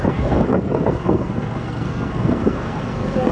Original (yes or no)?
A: no